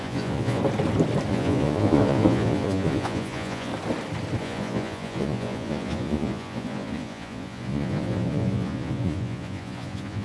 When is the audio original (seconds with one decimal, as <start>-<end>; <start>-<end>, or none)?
0.6-1.3; 3.7-4.4